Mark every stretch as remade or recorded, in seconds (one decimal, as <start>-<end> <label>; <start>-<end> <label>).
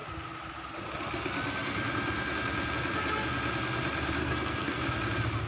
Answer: 0.0-4.2 recorded; 4.2-4.8 remade; 4.8-5.5 recorded